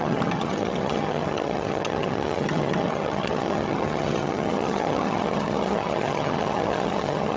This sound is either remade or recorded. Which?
remade